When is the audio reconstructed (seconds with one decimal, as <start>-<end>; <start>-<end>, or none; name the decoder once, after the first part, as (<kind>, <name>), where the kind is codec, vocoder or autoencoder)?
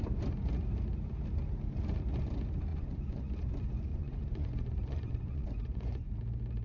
2.7-3.3 (vocoder, Vocos); 3.9-6.1